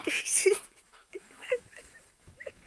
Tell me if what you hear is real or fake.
fake